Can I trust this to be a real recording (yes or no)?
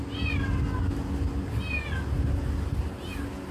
yes